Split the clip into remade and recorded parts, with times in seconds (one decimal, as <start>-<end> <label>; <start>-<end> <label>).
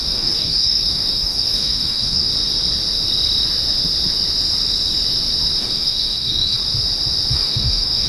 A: 0.0-2.3 remade; 2.3-5.6 recorded; 5.6-6.6 remade; 6.6-7.3 recorded; 7.3-8.1 remade